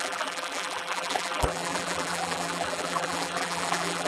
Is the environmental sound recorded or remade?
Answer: remade